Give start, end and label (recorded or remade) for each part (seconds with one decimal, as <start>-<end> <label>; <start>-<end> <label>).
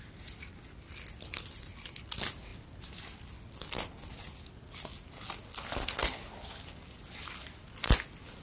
0.0-2.5 recorded; 2.5-4.1 remade; 4.1-8.4 recorded